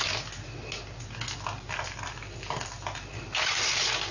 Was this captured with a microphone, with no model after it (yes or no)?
yes